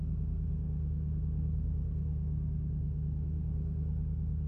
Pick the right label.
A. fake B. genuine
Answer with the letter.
A